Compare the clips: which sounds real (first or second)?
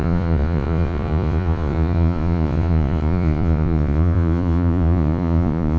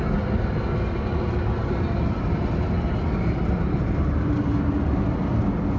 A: second